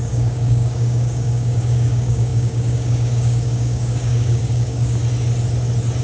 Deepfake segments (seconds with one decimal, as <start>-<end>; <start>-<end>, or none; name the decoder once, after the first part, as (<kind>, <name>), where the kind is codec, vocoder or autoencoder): 0.0-5.0 (codec, DAC)